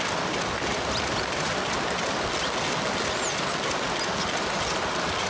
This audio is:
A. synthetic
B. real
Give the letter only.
B